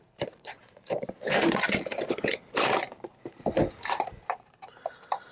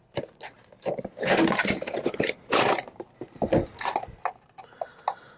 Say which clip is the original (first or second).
second